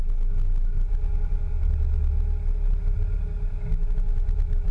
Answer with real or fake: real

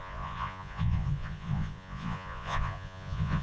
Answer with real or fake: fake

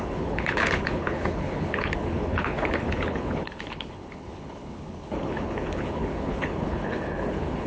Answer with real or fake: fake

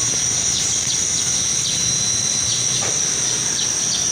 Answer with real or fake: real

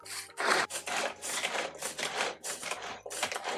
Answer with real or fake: fake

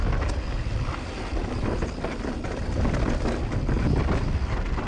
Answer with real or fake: real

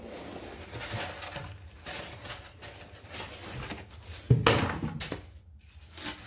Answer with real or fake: real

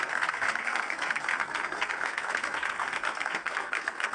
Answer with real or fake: fake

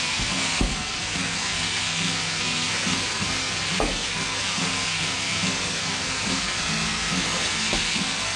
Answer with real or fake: fake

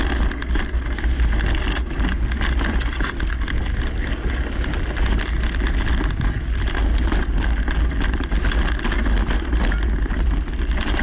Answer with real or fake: real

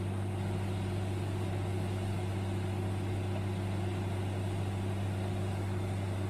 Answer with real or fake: real